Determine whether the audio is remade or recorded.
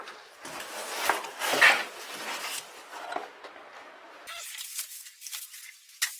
recorded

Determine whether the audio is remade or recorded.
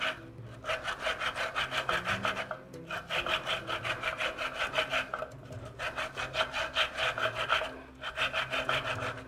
recorded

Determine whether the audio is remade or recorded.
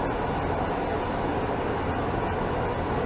recorded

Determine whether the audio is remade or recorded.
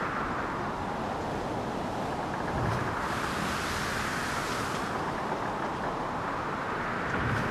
recorded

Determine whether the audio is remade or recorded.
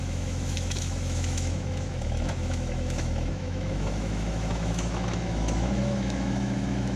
remade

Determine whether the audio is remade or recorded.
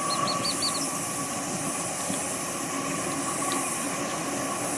recorded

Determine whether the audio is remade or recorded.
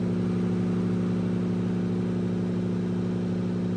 recorded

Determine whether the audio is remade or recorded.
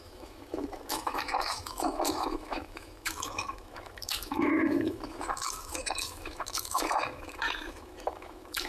remade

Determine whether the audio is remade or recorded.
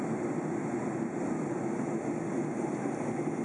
recorded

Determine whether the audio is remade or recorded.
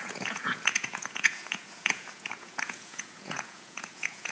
remade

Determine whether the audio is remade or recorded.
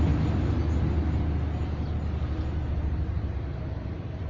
recorded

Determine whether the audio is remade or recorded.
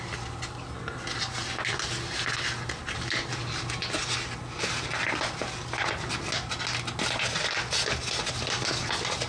recorded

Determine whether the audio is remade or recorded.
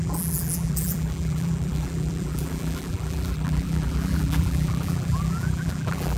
remade